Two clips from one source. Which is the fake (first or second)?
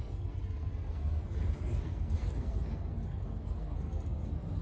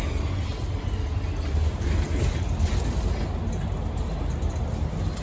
first